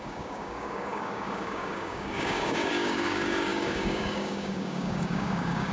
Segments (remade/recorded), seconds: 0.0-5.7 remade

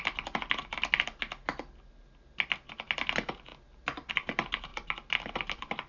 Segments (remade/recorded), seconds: 0.0-5.9 recorded

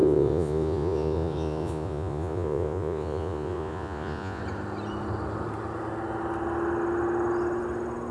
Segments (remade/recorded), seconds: 0.0-4.4 remade; 4.4-8.1 recorded

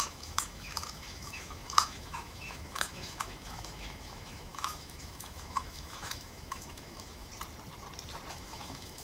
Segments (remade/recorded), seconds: 0.0-7.3 remade; 7.3-8.3 recorded; 8.3-9.0 remade

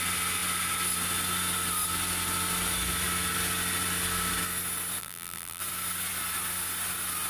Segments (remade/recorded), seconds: 0.0-5.0 recorded; 5.0-5.6 remade; 5.6-7.3 recorded

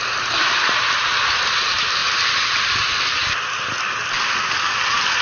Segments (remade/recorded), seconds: 0.0-2.0 recorded; 2.0-4.3 remade; 4.3-5.2 recorded